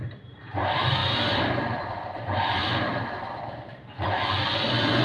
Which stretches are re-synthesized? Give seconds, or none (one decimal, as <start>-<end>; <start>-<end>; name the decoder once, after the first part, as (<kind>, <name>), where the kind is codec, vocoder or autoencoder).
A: 0.0-2.6 (vocoder, BigVGAN v2); 3.7-5.0